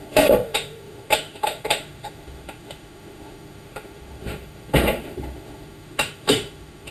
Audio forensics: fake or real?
fake